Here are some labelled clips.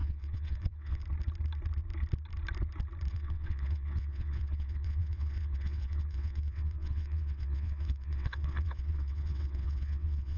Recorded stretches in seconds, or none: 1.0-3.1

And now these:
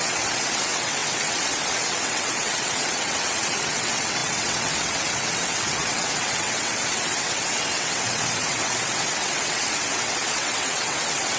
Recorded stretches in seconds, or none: none